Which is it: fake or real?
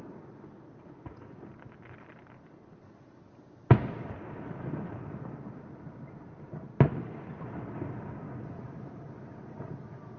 real